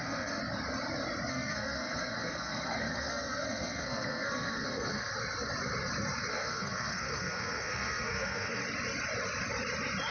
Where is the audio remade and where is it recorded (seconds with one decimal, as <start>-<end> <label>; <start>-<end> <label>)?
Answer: 0.0-0.4 remade; 0.4-1.3 recorded; 1.3-5.1 remade; 5.1-6.3 recorded; 6.3-8.6 remade; 8.6-10.1 recorded